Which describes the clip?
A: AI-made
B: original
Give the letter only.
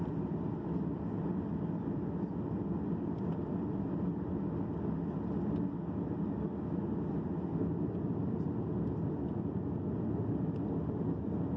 B